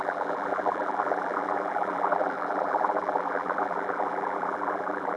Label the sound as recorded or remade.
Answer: remade